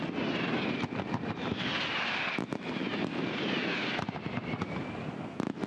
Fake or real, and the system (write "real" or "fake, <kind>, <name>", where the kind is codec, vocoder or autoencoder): real